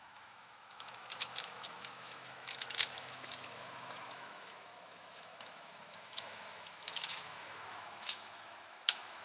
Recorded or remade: remade